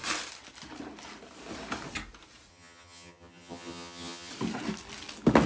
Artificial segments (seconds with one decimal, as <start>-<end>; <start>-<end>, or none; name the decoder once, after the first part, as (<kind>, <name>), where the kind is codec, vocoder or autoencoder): 2.5-4.3 (vocoder, HiFi-GAN)